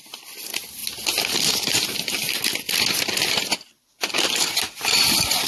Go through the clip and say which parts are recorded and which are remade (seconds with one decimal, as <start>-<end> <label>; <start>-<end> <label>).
0.0-5.5 recorded